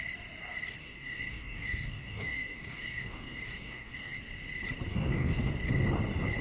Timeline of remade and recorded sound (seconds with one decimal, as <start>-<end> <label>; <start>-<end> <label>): 0.0-0.8 recorded; 0.8-4.2 remade; 4.2-4.9 recorded; 4.9-5.5 remade; 5.5-6.4 recorded